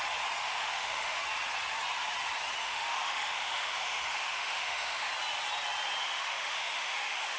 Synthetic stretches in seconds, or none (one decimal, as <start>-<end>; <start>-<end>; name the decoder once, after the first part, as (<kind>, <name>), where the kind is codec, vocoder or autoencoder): 0.4-1.2 (autoencoder, DAC-VAE); 2.6-5.1; 6.0-7.4